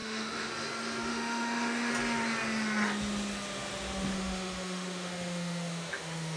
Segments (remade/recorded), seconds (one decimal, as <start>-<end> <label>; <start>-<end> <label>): 0.0-0.5 remade; 0.5-1.1 recorded; 1.1-1.9 remade; 1.9-4.1 recorded; 4.1-6.4 remade